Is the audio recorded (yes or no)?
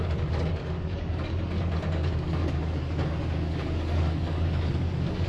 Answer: no